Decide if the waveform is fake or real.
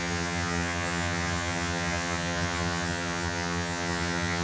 fake